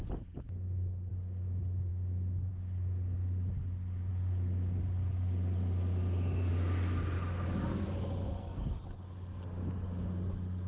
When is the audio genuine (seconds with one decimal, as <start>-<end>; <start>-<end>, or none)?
0.0-8.3; 9.0-10.7